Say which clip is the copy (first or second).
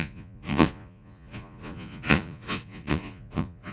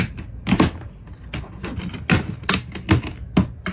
first